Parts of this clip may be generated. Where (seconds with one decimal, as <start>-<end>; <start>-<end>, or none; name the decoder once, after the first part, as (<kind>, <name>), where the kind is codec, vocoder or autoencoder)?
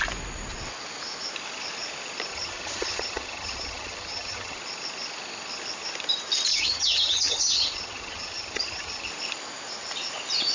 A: 2.3-4.6 (vocoder, HiFi-GAN); 6.5-9.1